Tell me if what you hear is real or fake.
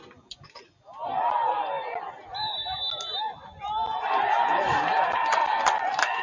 real